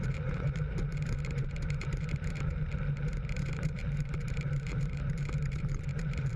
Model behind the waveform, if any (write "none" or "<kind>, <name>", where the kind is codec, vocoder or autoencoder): vocoder, BigVGAN v2